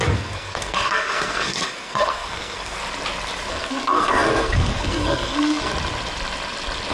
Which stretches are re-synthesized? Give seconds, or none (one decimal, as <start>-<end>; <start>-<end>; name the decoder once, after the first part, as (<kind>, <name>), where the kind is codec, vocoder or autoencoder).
0.0-2.8 (codec, SNAC); 3.5-5.7